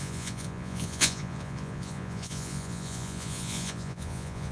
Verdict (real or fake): fake